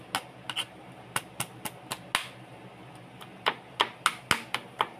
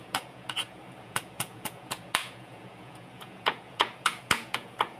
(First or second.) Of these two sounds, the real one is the first